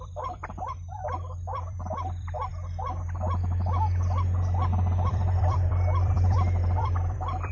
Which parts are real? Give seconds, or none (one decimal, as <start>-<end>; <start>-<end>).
2.5-5.1